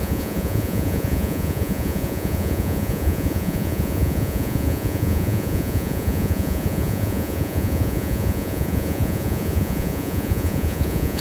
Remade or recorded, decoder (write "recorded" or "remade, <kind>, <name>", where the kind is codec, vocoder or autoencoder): remade, vocoder, Vocos